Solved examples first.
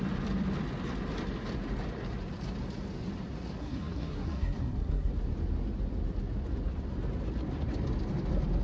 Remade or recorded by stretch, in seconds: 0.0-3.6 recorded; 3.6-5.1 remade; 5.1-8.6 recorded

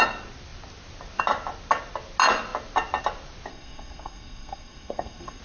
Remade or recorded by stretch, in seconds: 0.0-3.5 recorded; 3.5-5.4 remade

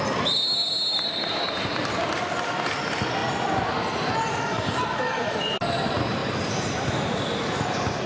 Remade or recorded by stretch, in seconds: 0.0-3.2 recorded; 3.2-5.0 remade; 5.0-6.2 recorded; 6.2-6.9 remade; 6.9-8.1 recorded

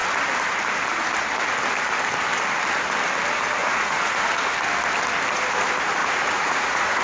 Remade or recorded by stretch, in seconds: 0.0-3.6 recorded; 3.6-4.3 remade; 4.3-6.0 recorded; 6.0-7.0 remade

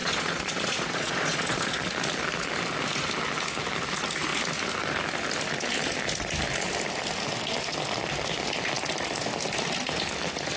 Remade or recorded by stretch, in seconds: 0.0-1.8 remade; 1.8-10.6 recorded

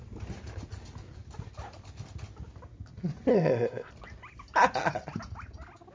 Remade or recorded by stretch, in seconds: 0.0-3.3 recorded; 3.3-3.9 remade; 3.9-5.9 recorded

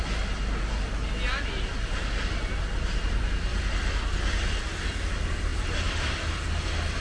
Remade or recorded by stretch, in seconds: 0.0-5.5 recorded; 5.5-6.1 remade; 6.1-7.0 recorded

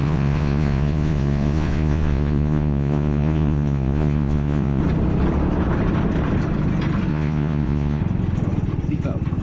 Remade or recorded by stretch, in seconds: 0.0-4.8 remade; 4.8-7.1 recorded; 7.1-8.0 remade; 8.0-9.4 recorded